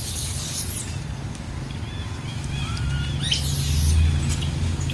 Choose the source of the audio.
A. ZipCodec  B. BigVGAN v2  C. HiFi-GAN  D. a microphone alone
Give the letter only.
D